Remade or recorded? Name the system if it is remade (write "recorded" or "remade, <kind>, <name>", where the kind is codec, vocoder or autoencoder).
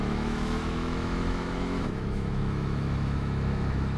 remade, autoencoder, DAC-VAE